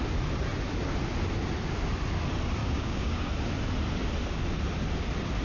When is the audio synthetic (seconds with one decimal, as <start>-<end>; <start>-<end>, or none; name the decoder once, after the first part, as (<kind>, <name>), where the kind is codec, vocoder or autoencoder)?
2.6-3.3 (codec, DAC)